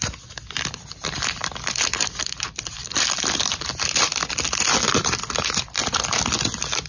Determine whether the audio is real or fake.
fake